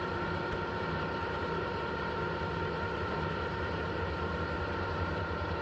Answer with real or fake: fake